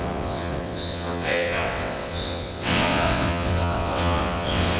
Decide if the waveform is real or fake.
fake